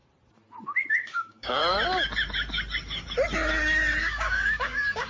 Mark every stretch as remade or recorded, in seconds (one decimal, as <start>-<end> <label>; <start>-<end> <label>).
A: 0.0-0.9 recorded; 0.9-1.6 remade; 1.6-4.0 recorded; 4.0-5.1 remade